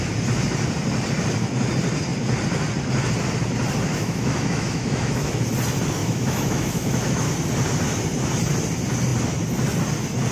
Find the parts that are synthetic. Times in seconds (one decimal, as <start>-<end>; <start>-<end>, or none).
3.9-5.4; 6.0-7.3